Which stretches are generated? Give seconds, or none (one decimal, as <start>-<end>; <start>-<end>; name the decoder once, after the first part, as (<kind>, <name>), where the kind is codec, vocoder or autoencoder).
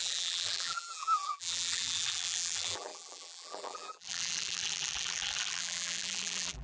0.0-6.6 (vocoder, BigVGAN v2)